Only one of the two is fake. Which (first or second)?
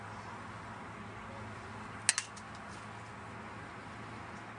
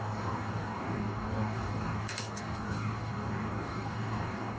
second